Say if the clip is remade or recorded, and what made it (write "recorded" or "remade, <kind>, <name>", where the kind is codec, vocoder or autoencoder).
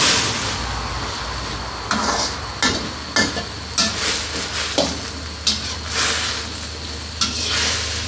recorded